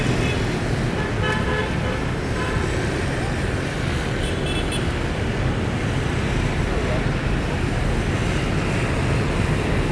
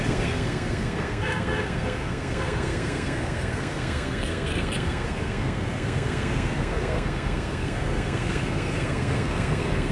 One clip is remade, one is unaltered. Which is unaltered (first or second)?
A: first